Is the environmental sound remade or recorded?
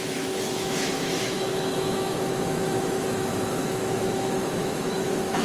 remade